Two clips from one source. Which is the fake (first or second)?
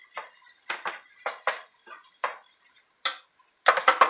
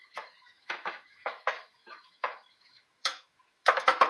second